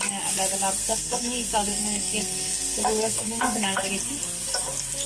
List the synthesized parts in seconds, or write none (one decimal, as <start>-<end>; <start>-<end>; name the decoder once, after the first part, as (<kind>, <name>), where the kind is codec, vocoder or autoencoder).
0.8-3.9 (codec, SNAC)

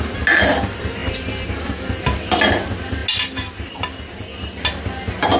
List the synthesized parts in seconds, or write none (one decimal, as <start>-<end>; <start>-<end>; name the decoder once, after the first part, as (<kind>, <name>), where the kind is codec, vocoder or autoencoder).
none

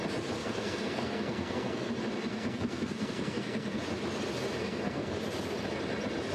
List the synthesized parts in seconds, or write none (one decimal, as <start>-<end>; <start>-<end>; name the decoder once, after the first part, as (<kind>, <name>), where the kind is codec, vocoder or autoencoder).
0.4-1.9 (codec, SNAC); 2.3-3.8; 4.6-5.1

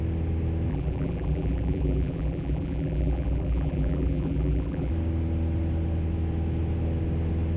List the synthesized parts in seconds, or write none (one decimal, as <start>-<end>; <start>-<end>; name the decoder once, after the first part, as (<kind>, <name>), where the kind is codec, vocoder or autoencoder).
0.7-4.9 (vocoder, BigVGAN v2)

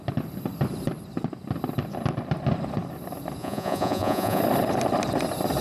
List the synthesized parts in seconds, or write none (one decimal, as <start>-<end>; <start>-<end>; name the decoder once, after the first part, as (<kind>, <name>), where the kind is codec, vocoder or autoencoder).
3.4-4.4 (vocoder, Vocos)

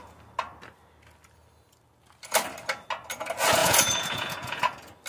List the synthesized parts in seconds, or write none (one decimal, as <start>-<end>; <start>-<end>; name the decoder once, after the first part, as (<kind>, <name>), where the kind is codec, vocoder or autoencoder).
3.6-4.6 (vocoder, Vocos)

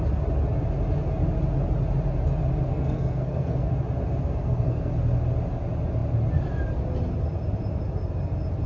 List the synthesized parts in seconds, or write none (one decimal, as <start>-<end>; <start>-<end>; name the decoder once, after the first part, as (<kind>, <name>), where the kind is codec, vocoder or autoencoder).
2.7-3.7 (codec, SNAC); 4.3-4.9

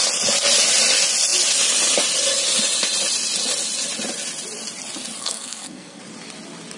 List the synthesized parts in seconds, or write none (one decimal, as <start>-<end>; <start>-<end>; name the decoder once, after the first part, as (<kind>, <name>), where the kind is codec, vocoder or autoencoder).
5.2-6.0 (codec, SNAC)